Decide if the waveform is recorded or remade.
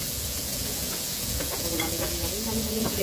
remade